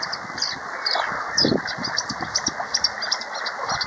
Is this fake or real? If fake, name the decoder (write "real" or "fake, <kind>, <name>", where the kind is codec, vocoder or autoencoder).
real